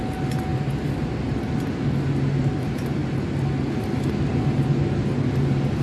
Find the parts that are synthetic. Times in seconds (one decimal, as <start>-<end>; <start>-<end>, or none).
none